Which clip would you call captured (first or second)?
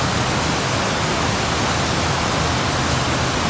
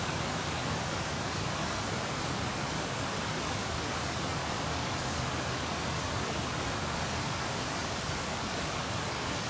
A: first